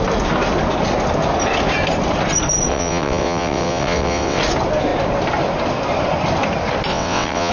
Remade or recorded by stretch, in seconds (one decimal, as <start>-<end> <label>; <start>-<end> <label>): 0.0-2.7 recorded; 2.7-4.4 remade; 4.4-6.9 recorded; 6.9-7.5 remade